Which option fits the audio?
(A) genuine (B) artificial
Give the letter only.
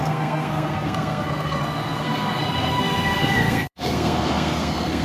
B